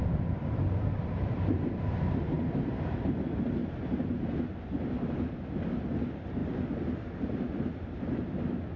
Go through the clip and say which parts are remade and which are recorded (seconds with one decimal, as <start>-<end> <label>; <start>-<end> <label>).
0.0-0.6 recorded; 0.6-2.9 remade; 2.9-3.6 recorded; 3.6-4.8 remade; 4.8-8.8 recorded